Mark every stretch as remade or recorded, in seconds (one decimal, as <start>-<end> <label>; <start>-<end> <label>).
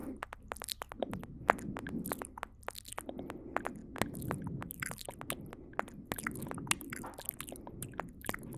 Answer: 0.0-8.6 recorded